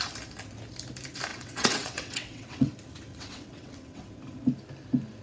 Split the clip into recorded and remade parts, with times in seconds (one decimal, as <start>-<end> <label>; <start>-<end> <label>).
0.0-1.3 recorded; 1.3-2.7 remade; 2.7-3.1 recorded; 3.1-4.1 remade; 4.1-5.2 recorded